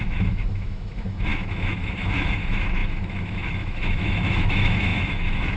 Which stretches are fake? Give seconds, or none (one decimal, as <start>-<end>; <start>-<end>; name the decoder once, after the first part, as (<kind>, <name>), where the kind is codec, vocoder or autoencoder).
0.0-5.6 (autoencoder, DAC-VAE)